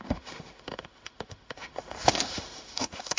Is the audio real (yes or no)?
no